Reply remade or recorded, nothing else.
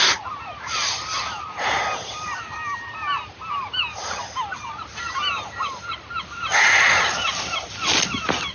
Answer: recorded